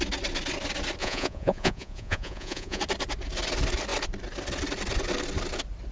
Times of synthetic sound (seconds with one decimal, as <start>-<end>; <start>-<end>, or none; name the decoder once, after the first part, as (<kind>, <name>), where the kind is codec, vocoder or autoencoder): 1.0-2.8 (vocoder, Vocos)